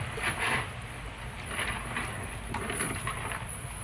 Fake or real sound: real